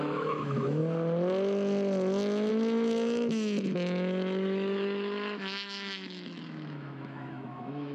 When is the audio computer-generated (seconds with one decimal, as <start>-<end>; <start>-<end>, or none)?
0.0-0.8; 2.5-7.9